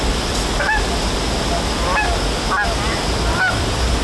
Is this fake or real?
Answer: real